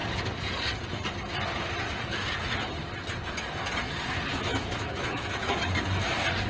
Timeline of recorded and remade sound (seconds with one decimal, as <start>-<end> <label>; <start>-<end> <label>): 0.0-4.5 recorded; 4.5-5.8 remade; 5.8-6.5 recorded